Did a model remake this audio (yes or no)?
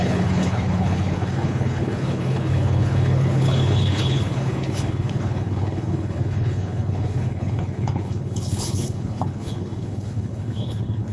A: yes